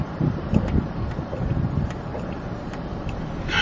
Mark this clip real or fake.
fake